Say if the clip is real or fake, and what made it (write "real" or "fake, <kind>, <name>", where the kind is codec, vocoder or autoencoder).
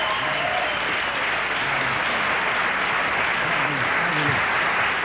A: real